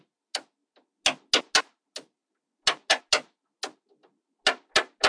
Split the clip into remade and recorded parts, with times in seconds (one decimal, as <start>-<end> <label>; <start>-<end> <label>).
0.0-5.1 recorded

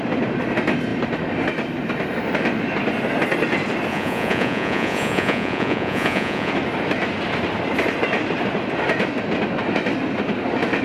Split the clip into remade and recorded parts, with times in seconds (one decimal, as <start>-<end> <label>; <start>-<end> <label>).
0.0-3.9 recorded; 3.9-6.5 remade; 6.5-10.8 recorded

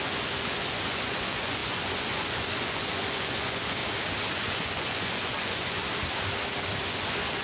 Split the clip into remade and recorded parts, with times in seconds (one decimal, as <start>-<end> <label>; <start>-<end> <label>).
0.0-3.8 remade; 3.8-4.3 recorded; 4.3-5.8 remade; 5.8-6.8 recorded; 6.8-7.4 remade

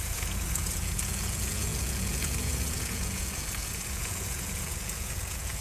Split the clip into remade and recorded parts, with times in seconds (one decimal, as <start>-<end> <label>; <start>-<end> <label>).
0.0-5.6 remade

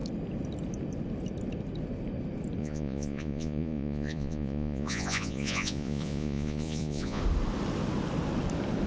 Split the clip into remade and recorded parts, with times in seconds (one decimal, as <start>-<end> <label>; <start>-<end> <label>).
0.0-2.6 recorded; 2.6-7.2 remade; 7.2-8.9 recorded

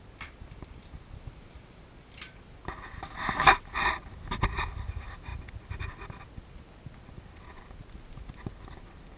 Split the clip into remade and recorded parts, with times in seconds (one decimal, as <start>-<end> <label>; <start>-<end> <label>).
0.0-9.2 recorded

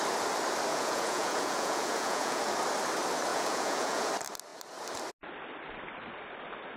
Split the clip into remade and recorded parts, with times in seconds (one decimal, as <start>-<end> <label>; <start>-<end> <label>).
0.0-0.7 recorded; 0.7-2.4 remade; 2.4-3.3 recorded; 3.3-4.1 remade; 4.1-6.8 recorded

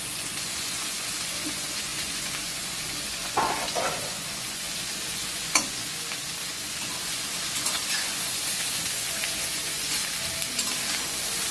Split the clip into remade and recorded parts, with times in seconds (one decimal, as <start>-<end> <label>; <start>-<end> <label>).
0.0-10.0 remade; 10.0-11.0 recorded; 11.0-11.5 remade